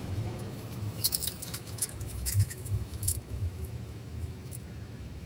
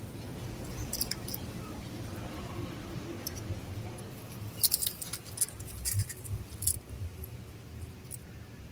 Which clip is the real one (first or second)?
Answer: second